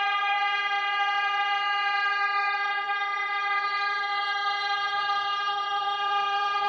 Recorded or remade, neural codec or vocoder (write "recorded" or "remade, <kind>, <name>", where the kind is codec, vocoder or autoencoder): remade, vocoder, HiFi-GAN